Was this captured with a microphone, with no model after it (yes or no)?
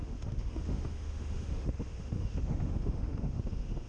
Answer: no